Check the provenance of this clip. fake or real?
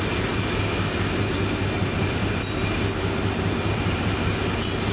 real